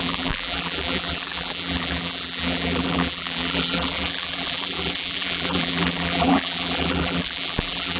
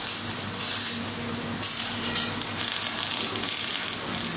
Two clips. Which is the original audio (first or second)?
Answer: second